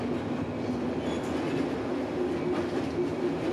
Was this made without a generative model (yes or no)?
yes